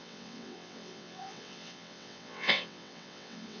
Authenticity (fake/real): fake